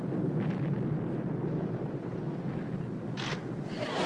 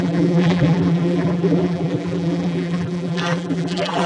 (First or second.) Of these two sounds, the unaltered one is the first